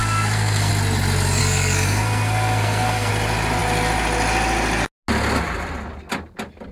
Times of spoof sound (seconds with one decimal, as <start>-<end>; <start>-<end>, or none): 0.0-0.7; 1.4-3.1